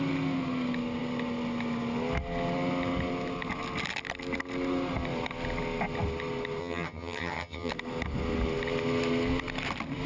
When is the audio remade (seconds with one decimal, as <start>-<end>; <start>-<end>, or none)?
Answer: 6.6-7.7